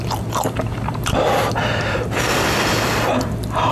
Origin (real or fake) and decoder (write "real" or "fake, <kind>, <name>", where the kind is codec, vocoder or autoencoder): fake, vocoder, BigVGAN v2